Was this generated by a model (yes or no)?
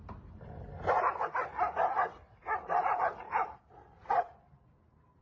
no